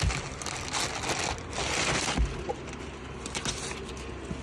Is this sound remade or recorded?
recorded